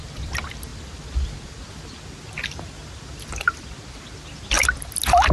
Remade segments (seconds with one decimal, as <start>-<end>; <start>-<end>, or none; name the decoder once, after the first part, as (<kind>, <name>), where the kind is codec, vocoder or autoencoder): none